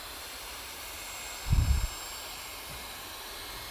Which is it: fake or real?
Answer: real